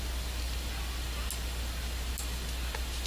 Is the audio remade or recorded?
recorded